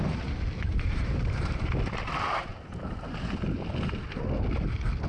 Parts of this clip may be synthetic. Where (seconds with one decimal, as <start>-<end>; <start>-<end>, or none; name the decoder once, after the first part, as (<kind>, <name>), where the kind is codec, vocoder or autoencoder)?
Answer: 0.7-1.7 (vocoder, BigVGAN v2); 2.5-3.2